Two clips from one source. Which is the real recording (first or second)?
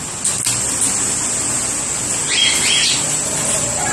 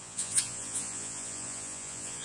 first